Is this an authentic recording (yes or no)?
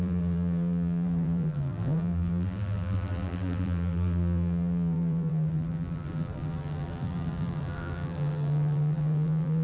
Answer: no